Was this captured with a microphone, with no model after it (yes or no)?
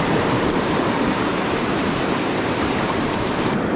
no